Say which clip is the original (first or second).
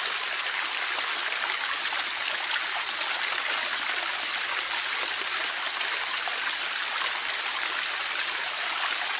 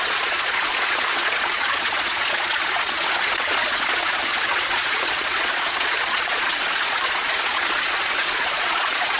first